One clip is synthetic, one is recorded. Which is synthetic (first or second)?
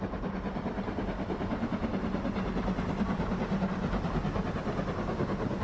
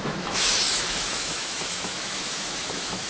second